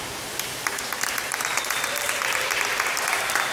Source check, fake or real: fake